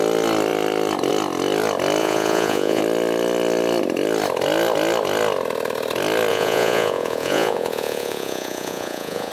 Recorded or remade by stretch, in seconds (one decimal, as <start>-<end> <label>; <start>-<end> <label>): 0.0-2.0 recorded; 2.0-2.8 remade; 2.8-6.3 recorded; 6.3-9.3 remade